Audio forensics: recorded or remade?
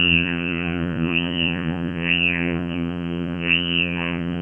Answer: remade